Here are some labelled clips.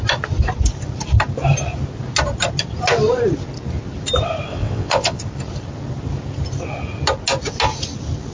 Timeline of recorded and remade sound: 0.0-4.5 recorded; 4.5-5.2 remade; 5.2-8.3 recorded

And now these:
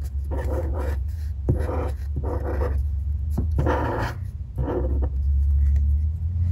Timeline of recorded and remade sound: 0.0-0.6 recorded; 0.6-2.1 remade; 2.1-2.8 recorded; 2.8-3.6 remade; 3.6-6.5 recorded

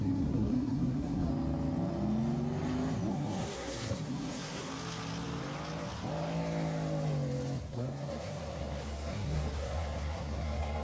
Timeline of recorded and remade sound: 0.0-1.3 remade; 1.3-3.1 recorded; 3.1-4.7 remade; 4.7-7.7 recorded; 7.7-10.8 remade

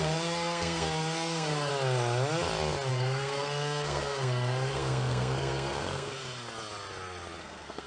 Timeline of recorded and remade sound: 0.0-1.7 remade; 1.7-2.9 recorded; 2.9-6.2 remade; 6.2-7.4 recorded; 7.4-7.9 remade

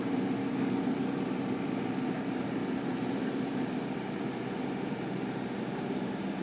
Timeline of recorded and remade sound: 0.0-0.4 recorded; 0.4-1.2 remade; 1.2-6.4 recorded

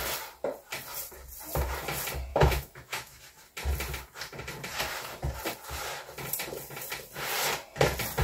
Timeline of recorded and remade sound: 0.0-2.3 recorded; 2.3-3.2 remade; 3.2-8.2 recorded

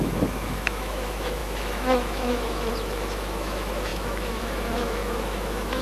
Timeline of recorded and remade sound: 0.0-5.8 remade

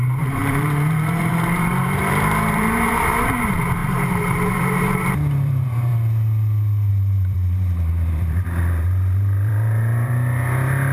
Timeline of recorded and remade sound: 0.0-5.9 remade; 5.9-6.9 recorded; 6.9-10.9 remade